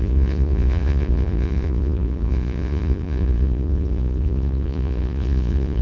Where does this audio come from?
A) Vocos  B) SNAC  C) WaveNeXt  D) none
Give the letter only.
A